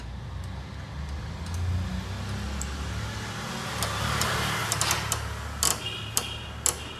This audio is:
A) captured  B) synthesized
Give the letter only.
A